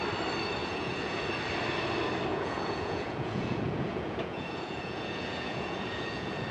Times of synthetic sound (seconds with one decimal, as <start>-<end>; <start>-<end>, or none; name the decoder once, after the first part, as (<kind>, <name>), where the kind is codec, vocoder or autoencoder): 0.6-1.3 (vocoder, Vocos); 2.3-6.5